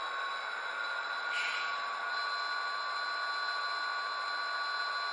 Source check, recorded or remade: recorded